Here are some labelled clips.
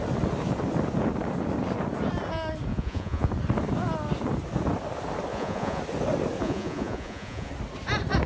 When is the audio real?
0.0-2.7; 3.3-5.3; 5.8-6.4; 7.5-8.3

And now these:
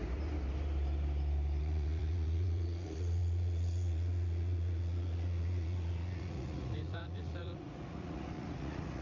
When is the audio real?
0.0-1.6

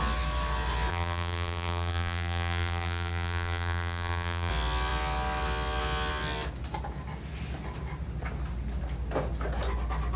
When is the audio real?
0.0-0.9; 4.5-10.2

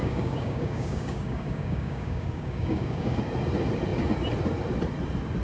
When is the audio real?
3.2-5.4

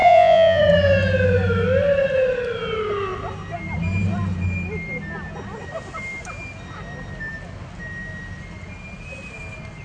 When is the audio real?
0.6-9.8

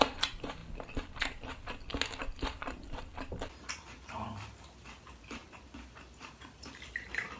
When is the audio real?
0.6-2.2; 3.1-3.8; 5.4-6.2

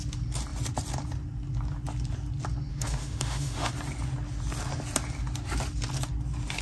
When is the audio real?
0.0-2.7; 3.7-6.6